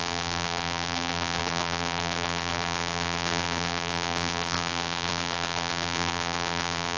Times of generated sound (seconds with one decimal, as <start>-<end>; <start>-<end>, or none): 0.0-7.0